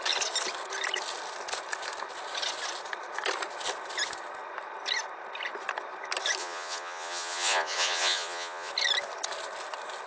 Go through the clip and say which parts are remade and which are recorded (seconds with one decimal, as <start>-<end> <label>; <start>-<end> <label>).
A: 0.0-6.4 recorded; 6.4-8.7 remade; 8.7-10.1 recorded